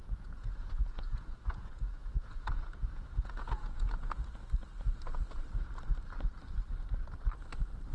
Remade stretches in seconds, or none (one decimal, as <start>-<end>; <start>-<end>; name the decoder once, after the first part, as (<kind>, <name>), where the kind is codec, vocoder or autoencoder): 0.0-4.2 (vocoder, Vocos)